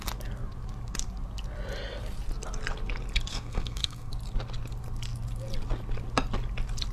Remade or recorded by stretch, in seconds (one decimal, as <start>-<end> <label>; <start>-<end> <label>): 0.0-3.3 recorded; 3.3-4.1 remade; 4.1-6.9 recorded